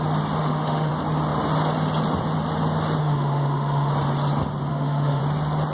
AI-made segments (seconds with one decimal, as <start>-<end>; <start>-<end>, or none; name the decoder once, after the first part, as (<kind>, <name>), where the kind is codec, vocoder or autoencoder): 0.4-0.9 (autoencoder, DAC-VAE); 3.0-3.9; 4.7-5.2